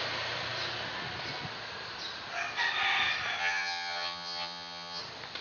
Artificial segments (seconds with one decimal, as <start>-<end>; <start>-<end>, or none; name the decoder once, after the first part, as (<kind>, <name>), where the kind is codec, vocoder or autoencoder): 3.4-5.0 (vocoder, HiFi-GAN)